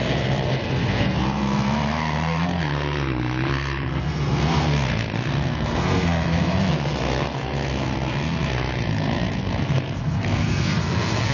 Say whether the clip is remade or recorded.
remade